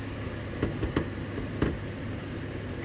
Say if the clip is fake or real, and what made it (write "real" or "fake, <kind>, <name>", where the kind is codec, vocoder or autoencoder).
real